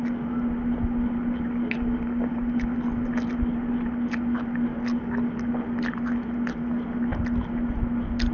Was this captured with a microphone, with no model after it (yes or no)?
yes